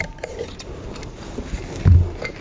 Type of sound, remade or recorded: recorded